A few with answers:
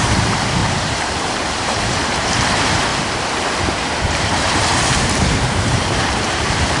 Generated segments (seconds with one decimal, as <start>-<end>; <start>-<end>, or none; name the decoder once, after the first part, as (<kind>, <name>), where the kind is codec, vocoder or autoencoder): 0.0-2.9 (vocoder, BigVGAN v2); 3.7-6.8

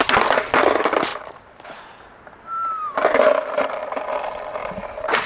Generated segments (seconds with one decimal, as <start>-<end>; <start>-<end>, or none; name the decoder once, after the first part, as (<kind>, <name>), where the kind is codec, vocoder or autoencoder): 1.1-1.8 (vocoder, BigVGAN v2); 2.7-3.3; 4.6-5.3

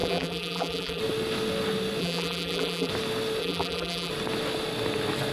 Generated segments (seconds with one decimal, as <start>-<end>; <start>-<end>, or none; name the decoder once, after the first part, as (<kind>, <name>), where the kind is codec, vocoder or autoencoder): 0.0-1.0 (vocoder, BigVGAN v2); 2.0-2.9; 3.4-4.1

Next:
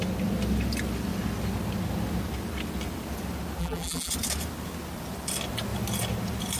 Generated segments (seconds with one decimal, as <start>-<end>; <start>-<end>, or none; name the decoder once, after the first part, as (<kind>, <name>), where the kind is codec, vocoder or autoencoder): 3.6-4.1 (vocoder, BigVGAN v2)